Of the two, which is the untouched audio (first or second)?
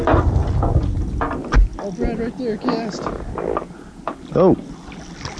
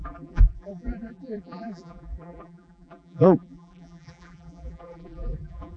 first